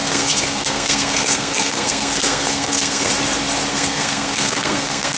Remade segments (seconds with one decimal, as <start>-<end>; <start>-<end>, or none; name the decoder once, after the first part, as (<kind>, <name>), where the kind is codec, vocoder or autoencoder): 0.0-3.1 (codec, SNAC); 3.7-5.2